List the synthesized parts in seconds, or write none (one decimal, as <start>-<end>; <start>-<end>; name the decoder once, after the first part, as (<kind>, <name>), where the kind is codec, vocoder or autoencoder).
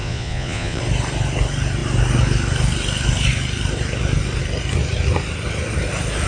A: 0.0-0.8 (vocoder, Vocos)